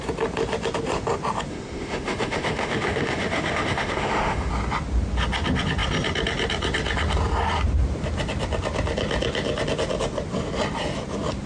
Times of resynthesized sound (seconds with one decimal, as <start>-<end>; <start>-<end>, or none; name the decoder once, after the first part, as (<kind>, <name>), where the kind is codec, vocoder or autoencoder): 1.5-4.5 (autoencoder, DAC-VAE)